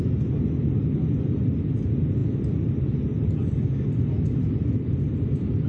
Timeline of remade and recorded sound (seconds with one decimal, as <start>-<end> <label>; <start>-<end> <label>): 0.0-5.7 recorded